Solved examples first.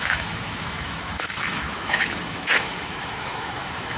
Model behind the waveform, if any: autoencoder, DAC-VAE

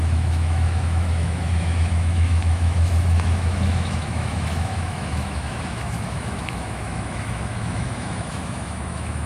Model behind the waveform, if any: autoencoder, DAC-VAE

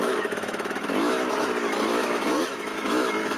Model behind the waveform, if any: autoencoder, DAC-VAE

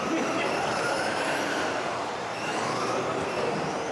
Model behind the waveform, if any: vocoder, BigVGAN v2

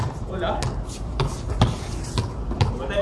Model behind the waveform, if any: none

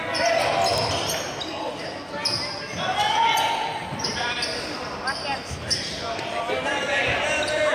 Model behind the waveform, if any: none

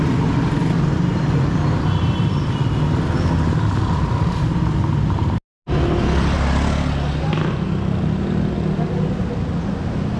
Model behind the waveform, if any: none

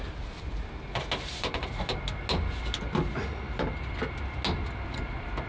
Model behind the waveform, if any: none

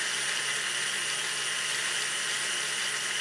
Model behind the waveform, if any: none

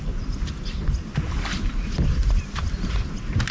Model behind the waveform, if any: none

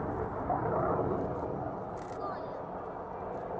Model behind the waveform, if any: none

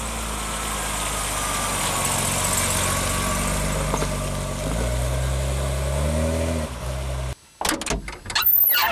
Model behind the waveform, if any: none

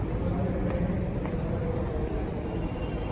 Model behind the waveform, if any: none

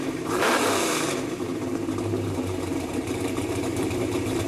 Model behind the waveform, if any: vocoder, BigVGAN v2